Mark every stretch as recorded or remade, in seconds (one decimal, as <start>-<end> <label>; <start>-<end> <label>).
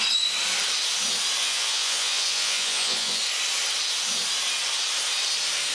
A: 0.0-1.4 recorded; 1.4-3.2 remade; 3.2-5.7 recorded